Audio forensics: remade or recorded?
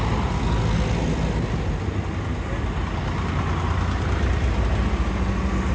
recorded